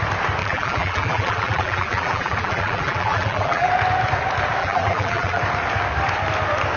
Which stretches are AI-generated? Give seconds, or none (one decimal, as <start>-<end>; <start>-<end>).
0.4-3.7; 4.6-5.4